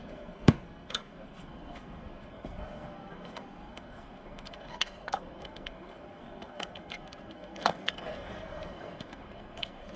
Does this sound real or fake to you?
fake